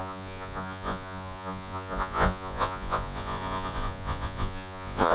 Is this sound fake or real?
fake